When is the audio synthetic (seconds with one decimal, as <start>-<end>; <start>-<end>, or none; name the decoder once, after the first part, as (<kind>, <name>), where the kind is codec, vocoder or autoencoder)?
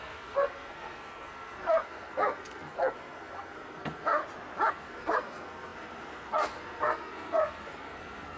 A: 0.0-4.2 (codec, SNAC); 4.7-8.4